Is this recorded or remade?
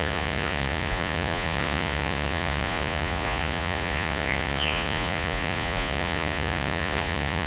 remade